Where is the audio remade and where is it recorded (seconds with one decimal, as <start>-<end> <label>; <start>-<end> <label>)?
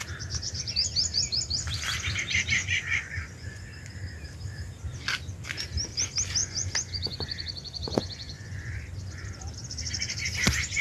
0.0-2.6 recorded; 2.6-3.6 remade; 3.6-6.4 recorded; 6.4-9.4 remade; 9.4-10.8 recorded